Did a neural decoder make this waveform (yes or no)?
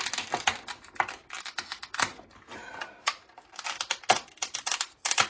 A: no